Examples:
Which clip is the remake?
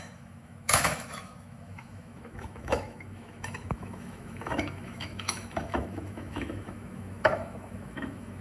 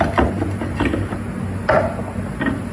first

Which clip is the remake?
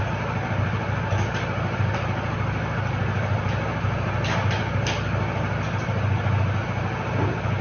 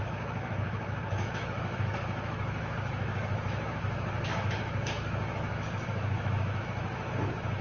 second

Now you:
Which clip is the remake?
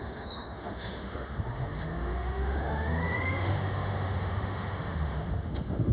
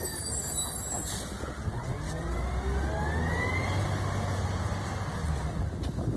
first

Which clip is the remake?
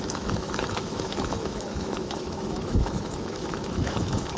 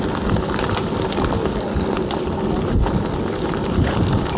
first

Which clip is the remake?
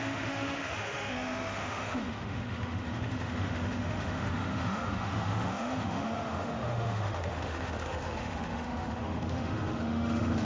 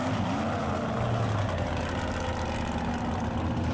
first